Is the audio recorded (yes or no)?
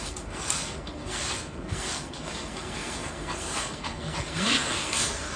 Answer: no